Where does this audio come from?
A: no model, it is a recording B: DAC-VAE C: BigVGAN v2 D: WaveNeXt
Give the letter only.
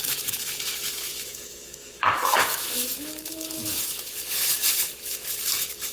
B